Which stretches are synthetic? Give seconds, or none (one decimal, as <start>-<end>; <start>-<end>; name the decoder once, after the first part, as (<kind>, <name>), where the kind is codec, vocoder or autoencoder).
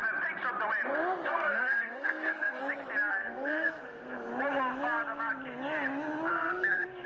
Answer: 1.3-2.6 (codec, SNAC); 3.1-4.3; 6.3-7.1